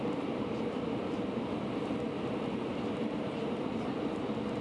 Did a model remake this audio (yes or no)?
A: no